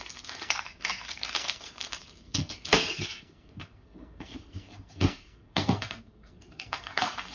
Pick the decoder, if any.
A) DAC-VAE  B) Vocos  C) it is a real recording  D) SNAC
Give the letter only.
D